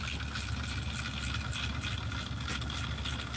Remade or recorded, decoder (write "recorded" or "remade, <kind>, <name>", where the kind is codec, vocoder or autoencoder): recorded